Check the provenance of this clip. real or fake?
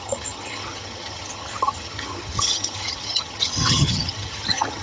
fake